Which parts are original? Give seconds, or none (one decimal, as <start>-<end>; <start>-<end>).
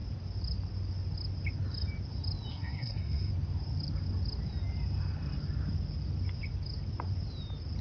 0.0-2.5; 3.3-7.8